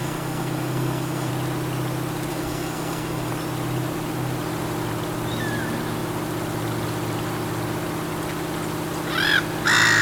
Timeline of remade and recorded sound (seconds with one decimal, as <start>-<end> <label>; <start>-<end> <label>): 0.0-1.3 remade; 1.3-2.3 recorded; 2.3-3.3 remade; 3.3-10.0 recorded